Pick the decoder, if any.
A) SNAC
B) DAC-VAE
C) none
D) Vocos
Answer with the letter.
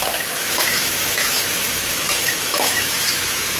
B